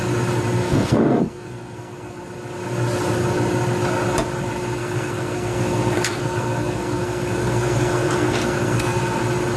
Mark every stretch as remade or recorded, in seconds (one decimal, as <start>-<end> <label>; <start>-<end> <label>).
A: 0.0-0.6 recorded; 0.6-2.2 remade; 2.2-4.8 recorded; 4.8-9.2 remade; 9.2-9.6 recorded